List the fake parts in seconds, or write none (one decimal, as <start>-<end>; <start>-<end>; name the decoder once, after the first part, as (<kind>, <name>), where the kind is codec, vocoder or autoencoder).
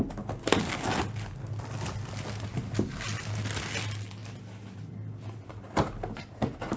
none